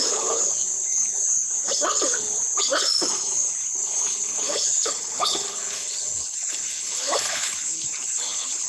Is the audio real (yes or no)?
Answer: no